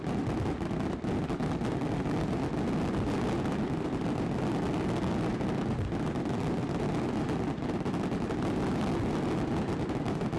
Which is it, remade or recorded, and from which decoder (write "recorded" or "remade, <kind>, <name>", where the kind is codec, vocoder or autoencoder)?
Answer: recorded